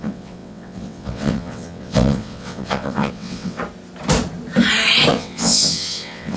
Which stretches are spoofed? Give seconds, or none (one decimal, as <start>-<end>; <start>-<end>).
0.0-3.6; 5.1-6.4